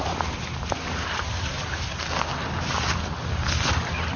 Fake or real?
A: real